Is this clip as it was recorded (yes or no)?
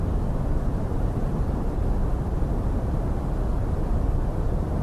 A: yes